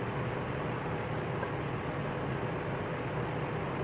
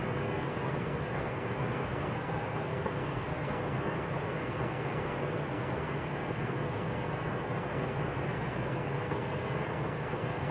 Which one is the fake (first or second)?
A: second